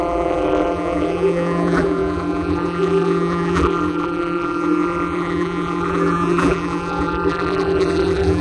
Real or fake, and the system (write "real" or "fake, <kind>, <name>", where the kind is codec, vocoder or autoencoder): fake, vocoder, BigVGAN v2